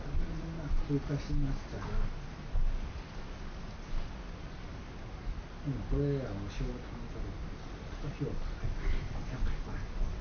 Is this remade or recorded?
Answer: recorded